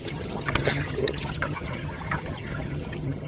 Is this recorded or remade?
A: remade